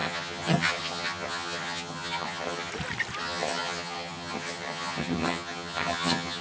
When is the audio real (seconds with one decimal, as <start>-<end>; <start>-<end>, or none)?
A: 2.7-3.2

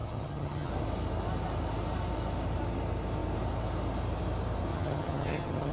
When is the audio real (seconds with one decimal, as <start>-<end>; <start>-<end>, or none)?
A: 0.7-4.7

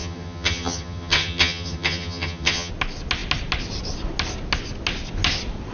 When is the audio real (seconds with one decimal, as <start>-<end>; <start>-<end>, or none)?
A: 2.7-5.7